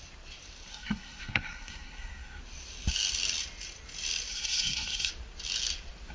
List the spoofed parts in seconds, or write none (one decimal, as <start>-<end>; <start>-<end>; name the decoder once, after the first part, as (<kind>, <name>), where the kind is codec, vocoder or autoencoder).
0.7-2.4 (codec, SNAC); 4.3-5.1